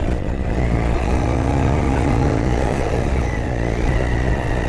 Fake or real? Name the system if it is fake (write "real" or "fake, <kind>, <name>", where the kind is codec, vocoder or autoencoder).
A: fake, vocoder, Vocos